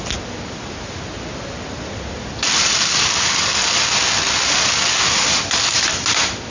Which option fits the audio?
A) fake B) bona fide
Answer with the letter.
B